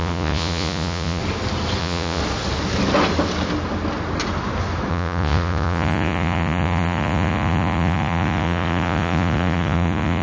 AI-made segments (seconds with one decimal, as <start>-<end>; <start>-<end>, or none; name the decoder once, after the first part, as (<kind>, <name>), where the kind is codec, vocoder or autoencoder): 0.0-1.2 (vocoder, Vocos); 1.8-2.2; 4.9-10.2